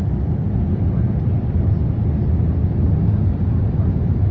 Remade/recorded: recorded